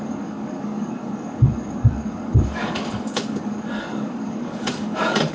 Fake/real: fake